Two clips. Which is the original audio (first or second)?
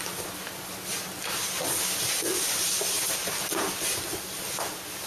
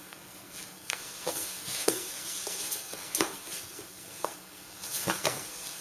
first